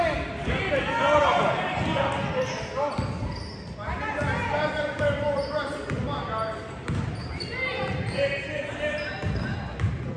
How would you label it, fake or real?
real